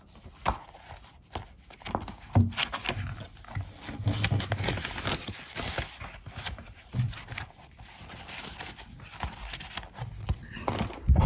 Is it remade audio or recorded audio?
recorded